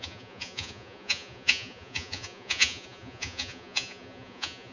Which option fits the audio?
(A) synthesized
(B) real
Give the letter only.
A